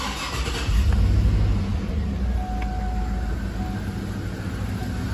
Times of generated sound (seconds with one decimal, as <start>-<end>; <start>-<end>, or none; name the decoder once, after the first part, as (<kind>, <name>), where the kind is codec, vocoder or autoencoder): none